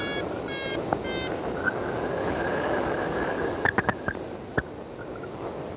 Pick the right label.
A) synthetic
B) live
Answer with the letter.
B